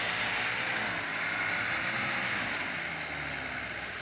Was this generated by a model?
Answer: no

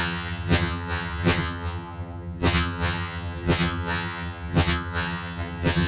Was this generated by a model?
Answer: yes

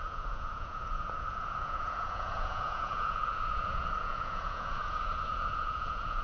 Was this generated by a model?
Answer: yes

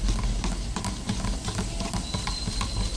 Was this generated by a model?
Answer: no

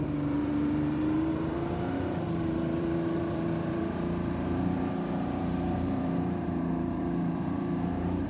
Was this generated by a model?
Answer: yes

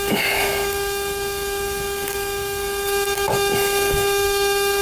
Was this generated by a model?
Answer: yes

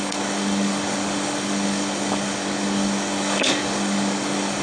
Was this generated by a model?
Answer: yes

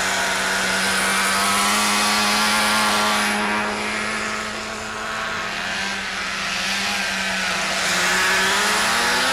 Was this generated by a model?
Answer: no